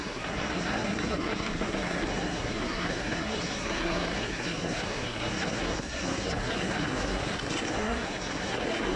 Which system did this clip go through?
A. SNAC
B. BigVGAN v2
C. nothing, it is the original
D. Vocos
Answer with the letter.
A